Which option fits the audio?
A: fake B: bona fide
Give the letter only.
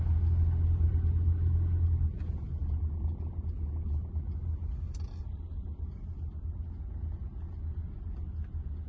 B